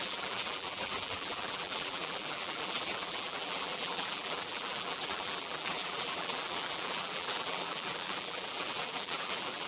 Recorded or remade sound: remade